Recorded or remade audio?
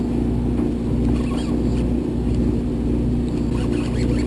recorded